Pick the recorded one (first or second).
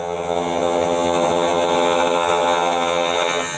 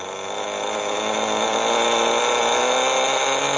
second